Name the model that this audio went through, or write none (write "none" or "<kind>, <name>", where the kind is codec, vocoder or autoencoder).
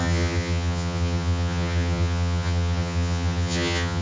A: vocoder, HiFi-GAN